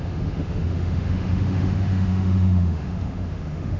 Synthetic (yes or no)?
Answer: yes